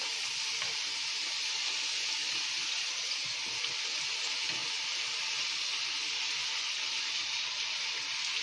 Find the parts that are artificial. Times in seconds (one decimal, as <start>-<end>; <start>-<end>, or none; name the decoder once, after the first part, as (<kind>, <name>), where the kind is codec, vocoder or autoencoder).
1.0-1.9 (vocoder, BigVGAN v2); 4.6-6.6